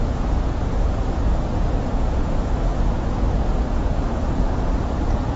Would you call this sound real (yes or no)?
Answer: no